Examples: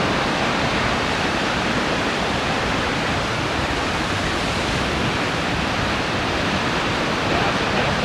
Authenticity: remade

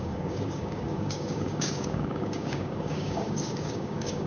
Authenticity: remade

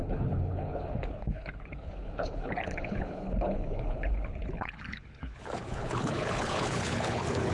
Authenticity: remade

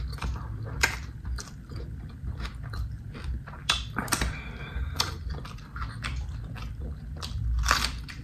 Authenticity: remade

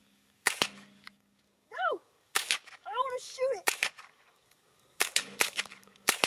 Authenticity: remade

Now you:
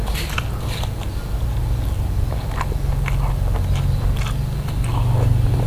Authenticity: recorded